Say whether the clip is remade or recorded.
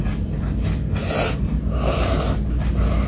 recorded